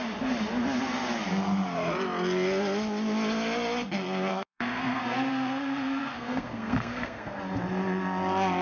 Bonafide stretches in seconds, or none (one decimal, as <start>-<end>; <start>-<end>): 0.0-4.3; 7.4-8.6